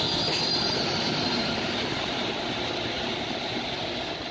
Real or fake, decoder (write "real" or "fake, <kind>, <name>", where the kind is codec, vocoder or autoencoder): fake, vocoder, BigVGAN v2